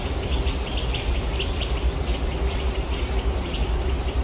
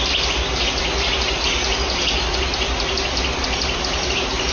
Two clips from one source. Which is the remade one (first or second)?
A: first